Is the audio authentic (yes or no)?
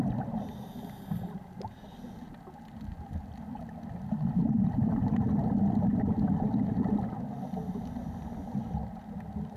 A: yes